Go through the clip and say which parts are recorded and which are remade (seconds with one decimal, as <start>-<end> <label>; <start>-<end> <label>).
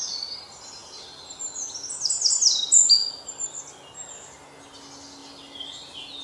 0.0-6.2 recorded